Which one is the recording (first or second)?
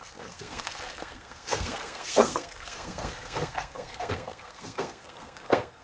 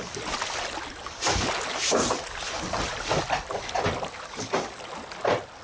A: second